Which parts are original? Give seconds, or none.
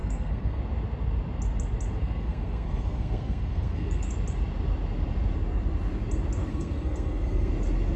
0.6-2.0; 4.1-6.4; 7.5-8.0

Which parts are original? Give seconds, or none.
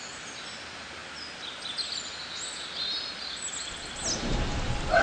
0.0-5.0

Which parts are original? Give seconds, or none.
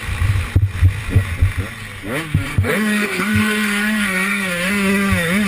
0.0-2.5; 4.7-5.5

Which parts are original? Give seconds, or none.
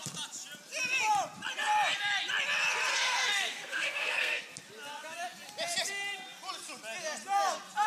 0.0-2.9; 4.4-7.9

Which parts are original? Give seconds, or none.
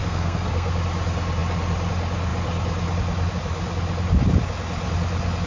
0.7-5.5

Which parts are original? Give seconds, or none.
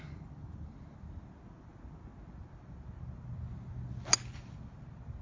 0.0-5.2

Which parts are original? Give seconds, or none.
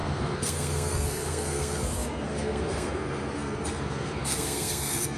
none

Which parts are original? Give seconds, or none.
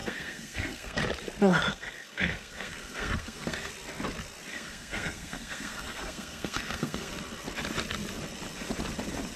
1.0-1.7; 3.7-4.5; 7.1-9.4